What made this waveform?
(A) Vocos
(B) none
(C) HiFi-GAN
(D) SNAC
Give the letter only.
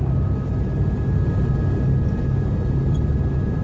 B